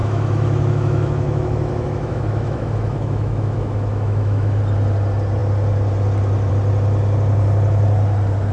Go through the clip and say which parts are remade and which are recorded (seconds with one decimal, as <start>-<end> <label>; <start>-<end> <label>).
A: 0.0-4.6 remade; 4.6-8.5 recorded

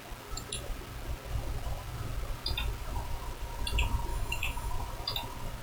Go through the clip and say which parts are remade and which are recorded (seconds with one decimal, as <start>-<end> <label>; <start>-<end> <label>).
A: 0.0-4.1 recorded; 4.1-4.7 remade; 4.7-5.6 recorded

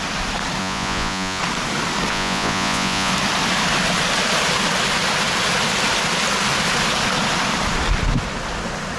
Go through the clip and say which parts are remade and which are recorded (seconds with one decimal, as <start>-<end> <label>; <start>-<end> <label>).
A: 0.0-0.6 recorded; 0.6-1.4 remade; 1.4-2.1 recorded; 2.1-3.1 remade; 3.1-9.0 recorded

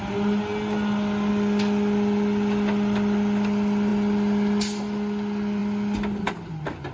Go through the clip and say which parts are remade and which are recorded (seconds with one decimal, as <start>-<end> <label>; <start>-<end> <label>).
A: 0.0-6.9 recorded

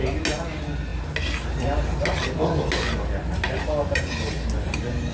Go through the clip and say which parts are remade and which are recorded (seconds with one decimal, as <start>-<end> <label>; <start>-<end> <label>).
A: 0.0-5.1 recorded

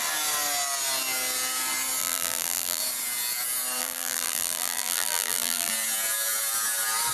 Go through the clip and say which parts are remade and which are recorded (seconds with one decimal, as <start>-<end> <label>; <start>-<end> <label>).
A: 0.0-2.0 recorded; 2.0-2.8 remade; 2.8-3.8 recorded; 3.8-5.7 remade; 5.7-7.1 recorded